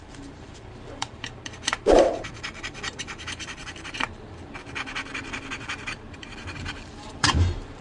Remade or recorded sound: remade